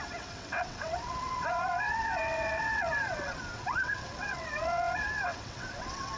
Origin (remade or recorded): remade